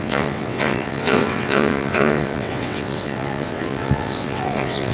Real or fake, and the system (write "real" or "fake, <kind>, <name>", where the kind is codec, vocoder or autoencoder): fake, vocoder, WaveNeXt